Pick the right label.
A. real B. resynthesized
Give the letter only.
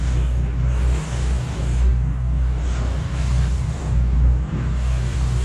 B